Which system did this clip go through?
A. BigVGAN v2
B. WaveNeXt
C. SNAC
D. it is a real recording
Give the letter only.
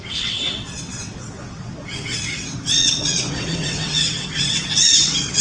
B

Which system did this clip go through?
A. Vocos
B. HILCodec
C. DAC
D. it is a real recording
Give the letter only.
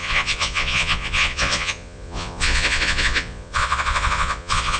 A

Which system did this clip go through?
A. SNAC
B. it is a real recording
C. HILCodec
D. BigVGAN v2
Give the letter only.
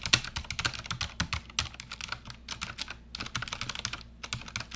B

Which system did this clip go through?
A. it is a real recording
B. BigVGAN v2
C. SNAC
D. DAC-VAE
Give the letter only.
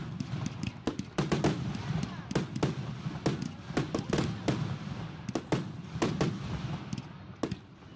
A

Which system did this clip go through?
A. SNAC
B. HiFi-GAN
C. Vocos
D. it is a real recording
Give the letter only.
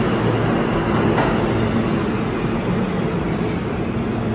D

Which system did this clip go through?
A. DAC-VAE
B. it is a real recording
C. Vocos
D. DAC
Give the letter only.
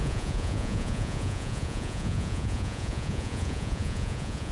C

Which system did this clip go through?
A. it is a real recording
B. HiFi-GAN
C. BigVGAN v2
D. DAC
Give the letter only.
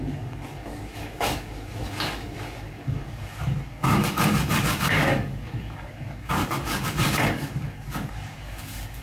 D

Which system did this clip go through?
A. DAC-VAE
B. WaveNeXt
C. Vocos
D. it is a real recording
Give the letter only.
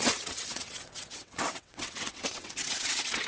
B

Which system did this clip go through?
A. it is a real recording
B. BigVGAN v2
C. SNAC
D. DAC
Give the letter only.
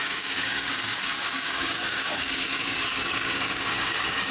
D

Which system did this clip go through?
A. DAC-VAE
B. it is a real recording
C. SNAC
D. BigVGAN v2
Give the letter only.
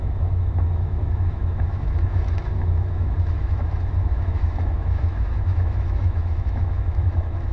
A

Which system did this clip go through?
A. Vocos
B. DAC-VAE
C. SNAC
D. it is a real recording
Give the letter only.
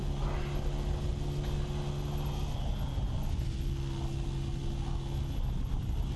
D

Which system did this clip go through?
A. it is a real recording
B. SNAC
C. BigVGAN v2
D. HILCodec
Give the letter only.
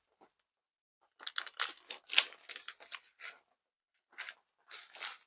A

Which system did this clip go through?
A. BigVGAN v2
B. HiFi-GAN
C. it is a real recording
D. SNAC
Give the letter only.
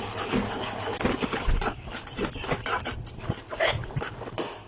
C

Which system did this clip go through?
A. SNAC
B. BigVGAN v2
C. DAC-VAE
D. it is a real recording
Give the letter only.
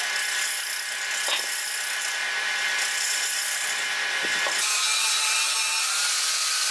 D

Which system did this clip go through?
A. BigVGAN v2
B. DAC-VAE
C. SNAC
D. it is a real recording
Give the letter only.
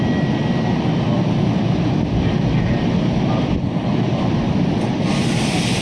D